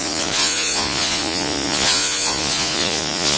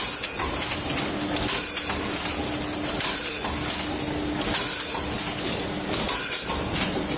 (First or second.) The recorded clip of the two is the second